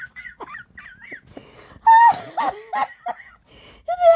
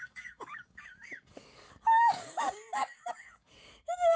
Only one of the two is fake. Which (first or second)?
second